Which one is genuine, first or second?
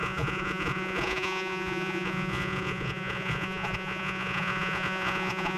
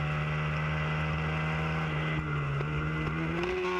second